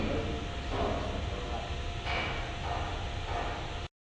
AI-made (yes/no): no